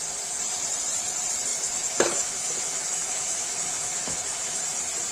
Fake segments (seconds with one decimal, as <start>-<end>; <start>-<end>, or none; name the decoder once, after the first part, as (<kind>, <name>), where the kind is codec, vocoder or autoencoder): 1.5-4.6 (autoencoder, DAC-VAE)